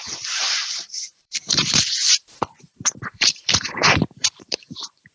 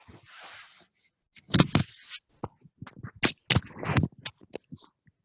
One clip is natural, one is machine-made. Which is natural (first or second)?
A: second